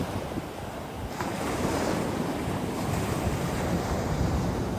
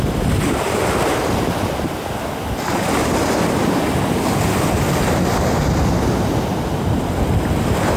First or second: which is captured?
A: second